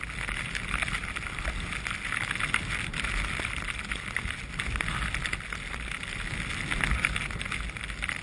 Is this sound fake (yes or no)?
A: no